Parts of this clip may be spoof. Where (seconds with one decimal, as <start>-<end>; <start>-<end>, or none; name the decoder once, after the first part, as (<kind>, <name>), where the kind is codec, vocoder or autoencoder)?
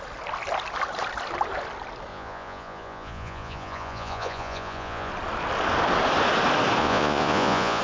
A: 2.1-5.1 (vocoder, Vocos); 6.8-7.8